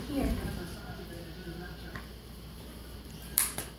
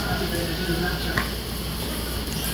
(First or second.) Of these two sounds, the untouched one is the second